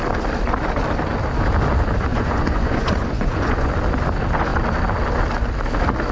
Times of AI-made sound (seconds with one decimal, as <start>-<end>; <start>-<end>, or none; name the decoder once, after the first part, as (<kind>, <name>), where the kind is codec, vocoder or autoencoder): 2.1-3.7 (vocoder, Vocos)